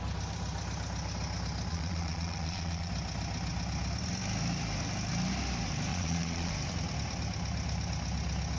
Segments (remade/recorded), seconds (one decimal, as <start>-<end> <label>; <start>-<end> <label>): 0.0-1.7 recorded; 1.7-2.9 remade; 2.9-5.9 recorded; 5.9-6.5 remade; 6.5-8.6 recorded